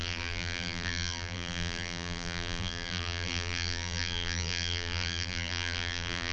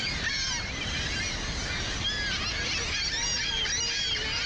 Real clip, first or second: second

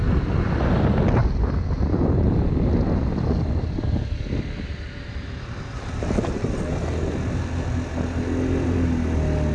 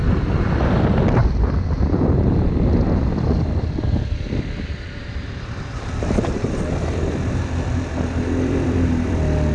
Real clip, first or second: first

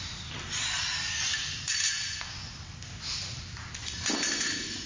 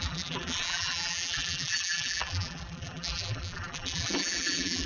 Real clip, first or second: first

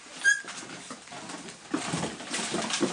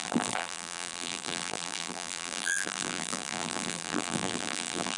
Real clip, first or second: first